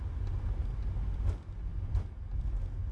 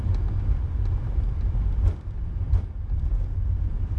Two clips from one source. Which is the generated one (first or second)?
second